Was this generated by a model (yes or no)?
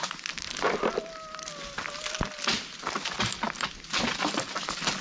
no